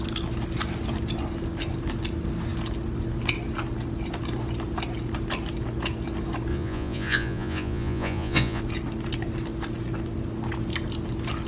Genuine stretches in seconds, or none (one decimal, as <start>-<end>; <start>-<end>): 0.0-6.5; 8.6-11.5